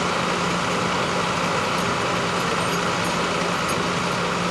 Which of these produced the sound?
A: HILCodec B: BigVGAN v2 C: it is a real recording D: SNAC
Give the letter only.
C